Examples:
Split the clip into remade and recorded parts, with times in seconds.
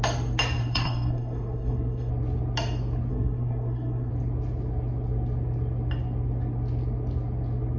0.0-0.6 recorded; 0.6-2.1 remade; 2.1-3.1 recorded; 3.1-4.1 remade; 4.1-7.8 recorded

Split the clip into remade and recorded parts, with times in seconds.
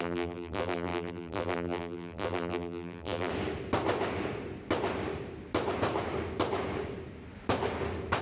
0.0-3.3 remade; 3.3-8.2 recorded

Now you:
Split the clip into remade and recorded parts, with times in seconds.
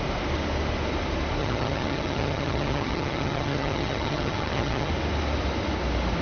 0.0-1.4 recorded; 1.4-4.9 remade; 4.9-6.2 recorded